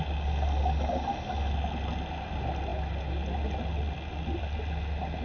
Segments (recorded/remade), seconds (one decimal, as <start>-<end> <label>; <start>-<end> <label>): 0.0-5.2 recorded